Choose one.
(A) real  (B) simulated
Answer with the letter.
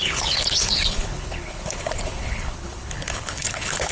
B